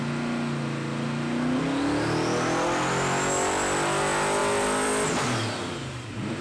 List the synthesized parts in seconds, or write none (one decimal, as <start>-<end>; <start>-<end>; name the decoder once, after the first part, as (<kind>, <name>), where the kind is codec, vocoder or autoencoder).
4.4-6.4 (vocoder, BigVGAN v2)